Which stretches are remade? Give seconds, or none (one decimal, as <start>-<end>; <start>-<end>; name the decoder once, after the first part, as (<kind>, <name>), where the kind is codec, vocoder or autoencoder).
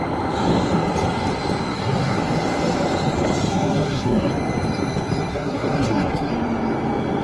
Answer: 1.7-2.2 (codec, SNAC); 3.5-4.3; 5.3-6.3